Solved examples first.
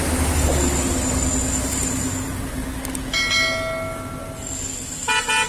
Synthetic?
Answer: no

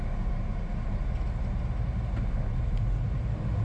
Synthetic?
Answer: no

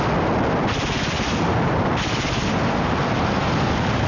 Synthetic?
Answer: no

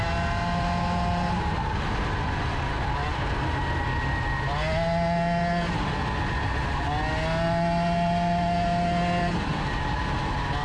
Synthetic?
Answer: no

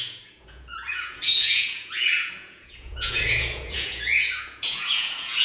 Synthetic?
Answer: yes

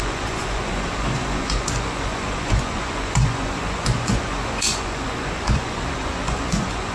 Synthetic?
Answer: yes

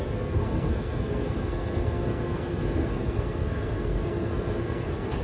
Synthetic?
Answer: yes